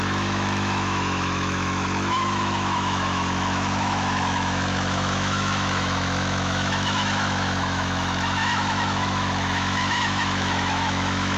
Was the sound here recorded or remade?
remade